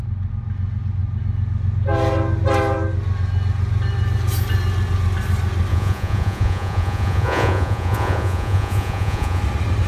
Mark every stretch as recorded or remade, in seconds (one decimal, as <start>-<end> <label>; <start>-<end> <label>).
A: 0.0-5.7 recorded; 5.7-9.4 remade; 9.4-9.9 recorded